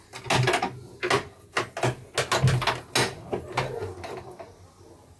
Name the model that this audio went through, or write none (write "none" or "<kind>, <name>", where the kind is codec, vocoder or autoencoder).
none